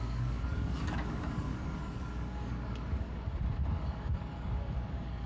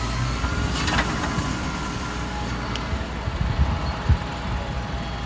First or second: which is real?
second